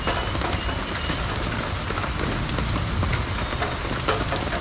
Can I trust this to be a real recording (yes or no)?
yes